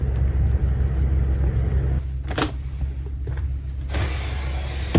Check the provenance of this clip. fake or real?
real